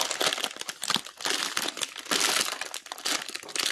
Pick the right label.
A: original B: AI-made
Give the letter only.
A